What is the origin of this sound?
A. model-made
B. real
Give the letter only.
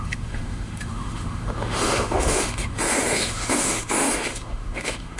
A